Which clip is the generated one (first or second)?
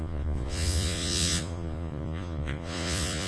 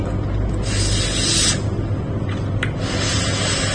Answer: first